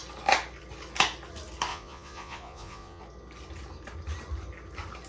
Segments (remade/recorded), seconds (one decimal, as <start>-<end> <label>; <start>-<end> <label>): 0.0-1.7 recorded; 1.7-3.0 remade; 3.0-5.1 recorded